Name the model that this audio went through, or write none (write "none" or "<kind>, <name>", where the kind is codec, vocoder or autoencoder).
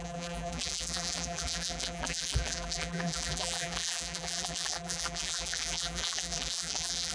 vocoder, BigVGAN v2